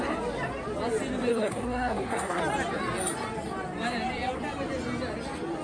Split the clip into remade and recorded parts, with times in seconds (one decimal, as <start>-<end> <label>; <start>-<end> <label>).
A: 0.0-1.3 recorded; 1.3-2.4 remade; 2.4-5.6 recorded